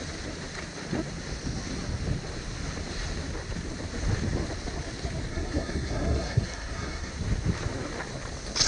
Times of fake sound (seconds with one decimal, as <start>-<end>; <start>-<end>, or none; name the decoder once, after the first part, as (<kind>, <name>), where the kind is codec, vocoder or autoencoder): 5.3-7.1 (codec, SNAC)